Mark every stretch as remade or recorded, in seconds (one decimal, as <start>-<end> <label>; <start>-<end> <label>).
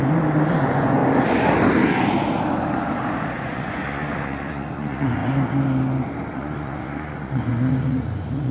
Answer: 0.0-0.5 recorded; 0.5-1.0 remade; 1.0-3.4 recorded; 3.4-5.2 remade; 5.2-6.3 recorded; 6.3-8.5 remade